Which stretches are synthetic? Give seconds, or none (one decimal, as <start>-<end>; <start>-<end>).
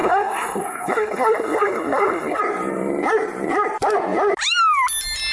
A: 0.0-2.4